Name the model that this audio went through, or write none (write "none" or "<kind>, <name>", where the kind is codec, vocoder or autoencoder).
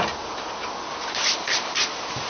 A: none